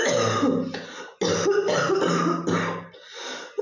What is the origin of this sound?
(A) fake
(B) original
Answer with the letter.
B